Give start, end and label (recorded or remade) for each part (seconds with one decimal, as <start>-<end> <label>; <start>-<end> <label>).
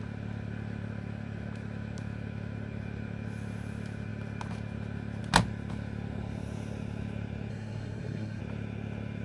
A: 0.0-7.5 recorded; 7.5-8.4 remade; 8.4-9.2 recorded